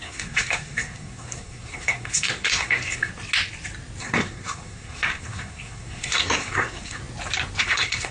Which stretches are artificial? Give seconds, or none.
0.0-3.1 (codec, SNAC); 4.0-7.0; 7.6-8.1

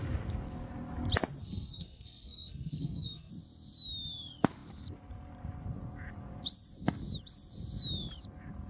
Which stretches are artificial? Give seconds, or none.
1.4-3.3 (codec, SNAC)

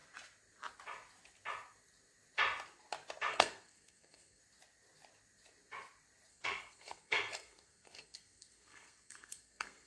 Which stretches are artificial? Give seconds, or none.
3.3-4.4 (codec, SNAC); 6.3-9.9